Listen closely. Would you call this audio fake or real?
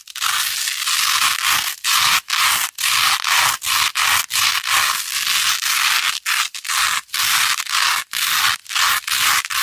real